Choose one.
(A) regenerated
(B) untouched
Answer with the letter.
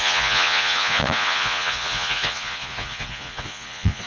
A